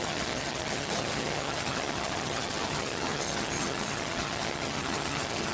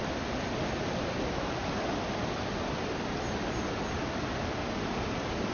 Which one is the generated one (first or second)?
first